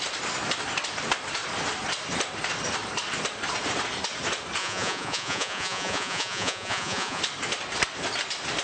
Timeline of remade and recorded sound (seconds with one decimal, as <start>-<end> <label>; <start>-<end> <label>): 0.0-4.6 recorded; 4.6-7.2 remade; 7.2-8.6 recorded